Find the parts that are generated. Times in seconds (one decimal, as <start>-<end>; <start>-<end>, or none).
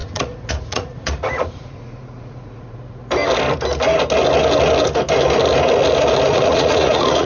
0.0-3.0; 6.3-7.2